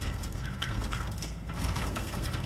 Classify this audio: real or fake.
fake